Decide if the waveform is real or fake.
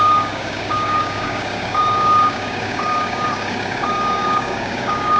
fake